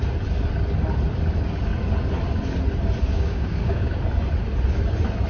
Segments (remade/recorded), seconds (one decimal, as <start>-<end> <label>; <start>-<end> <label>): 0.0-3.1 recorded; 3.1-4.0 remade; 4.0-5.3 recorded

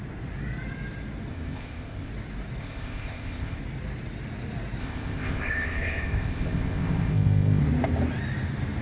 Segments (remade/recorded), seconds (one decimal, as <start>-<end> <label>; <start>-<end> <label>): 0.0-1.3 recorded; 1.3-2.1 remade; 2.1-2.6 recorded; 2.6-3.6 remade; 3.6-4.8 recorded; 4.8-7.6 remade; 7.6-8.8 recorded